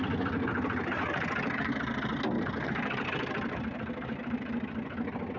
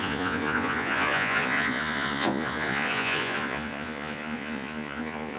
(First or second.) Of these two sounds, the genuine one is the first